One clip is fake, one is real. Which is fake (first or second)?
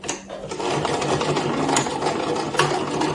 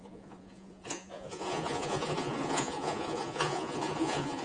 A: second